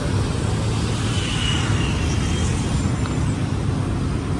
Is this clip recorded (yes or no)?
yes